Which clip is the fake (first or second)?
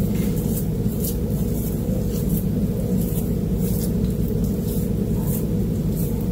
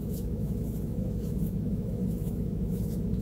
second